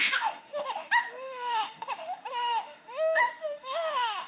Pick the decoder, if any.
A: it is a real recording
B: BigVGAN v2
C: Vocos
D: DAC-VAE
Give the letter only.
D